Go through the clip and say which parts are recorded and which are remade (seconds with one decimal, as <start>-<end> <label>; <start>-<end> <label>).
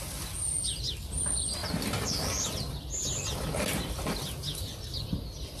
0.0-5.6 recorded